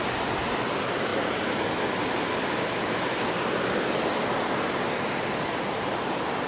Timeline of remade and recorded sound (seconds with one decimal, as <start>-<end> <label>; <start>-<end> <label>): 0.0-6.5 recorded